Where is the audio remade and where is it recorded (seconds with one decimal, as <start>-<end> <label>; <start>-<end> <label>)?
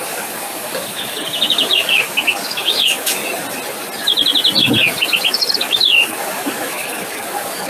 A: 0.0-3.2 remade; 3.2-5.5 recorded; 5.5-7.7 remade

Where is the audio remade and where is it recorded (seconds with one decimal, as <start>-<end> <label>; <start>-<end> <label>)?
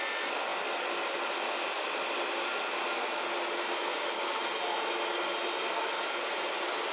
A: 0.0-3.9 recorded; 3.9-4.4 remade; 4.4-6.9 recorded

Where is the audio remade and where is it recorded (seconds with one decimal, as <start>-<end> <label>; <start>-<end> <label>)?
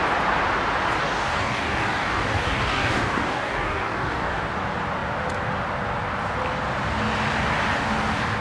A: 0.0-1.0 recorded; 1.0-4.4 remade; 4.4-8.4 recorded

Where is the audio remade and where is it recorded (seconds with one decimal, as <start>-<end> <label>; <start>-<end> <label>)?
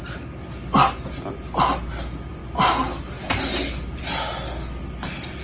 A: 0.0-5.4 recorded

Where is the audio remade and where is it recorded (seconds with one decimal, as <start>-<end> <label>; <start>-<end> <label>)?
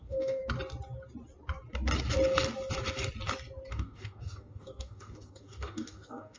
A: 0.0-0.4 remade; 0.4-3.7 recorded; 3.7-6.4 remade